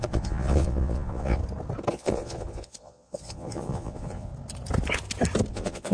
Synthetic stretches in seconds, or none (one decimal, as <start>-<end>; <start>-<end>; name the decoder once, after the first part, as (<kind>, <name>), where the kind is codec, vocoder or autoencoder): 0.0-1.4 (vocoder, Vocos); 1.9-4.3; 5.5-5.9